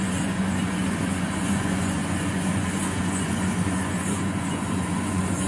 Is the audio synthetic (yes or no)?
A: yes